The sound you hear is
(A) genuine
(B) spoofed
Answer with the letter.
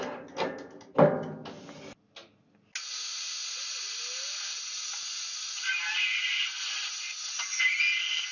A